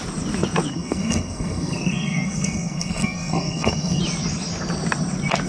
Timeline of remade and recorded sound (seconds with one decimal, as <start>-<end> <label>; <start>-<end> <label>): 0.0-0.7 recorded; 0.7-4.0 remade; 4.0-5.5 recorded